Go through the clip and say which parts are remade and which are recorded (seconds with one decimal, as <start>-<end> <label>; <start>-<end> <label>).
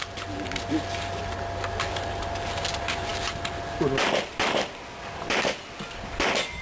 0.0-6.6 remade